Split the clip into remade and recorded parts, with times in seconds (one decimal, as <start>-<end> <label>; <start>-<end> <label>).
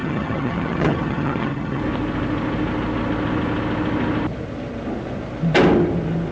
0.0-1.8 remade; 1.8-6.3 recorded